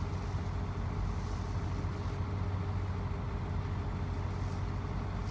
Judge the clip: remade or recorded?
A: recorded